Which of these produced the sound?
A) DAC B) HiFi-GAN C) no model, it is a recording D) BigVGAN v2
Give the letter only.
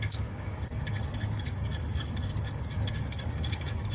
A